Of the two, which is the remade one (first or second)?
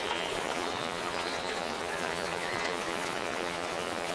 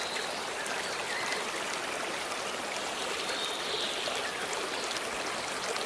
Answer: first